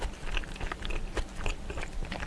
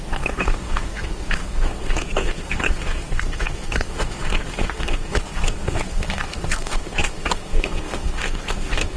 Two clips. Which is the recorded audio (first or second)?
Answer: first